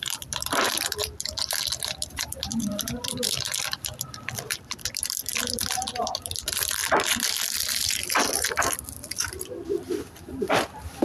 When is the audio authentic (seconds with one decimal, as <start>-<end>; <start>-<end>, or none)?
1.0-1.6